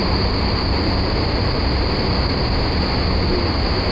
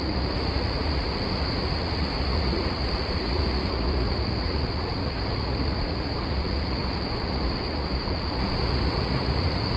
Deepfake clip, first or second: second